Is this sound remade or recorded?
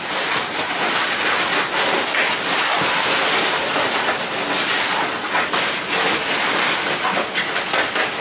recorded